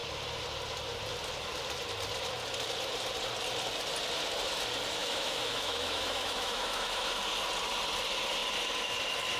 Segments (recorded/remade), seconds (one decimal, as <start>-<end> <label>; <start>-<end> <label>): 0.0-5.0 recorded; 5.0-7.2 remade; 7.2-9.4 recorded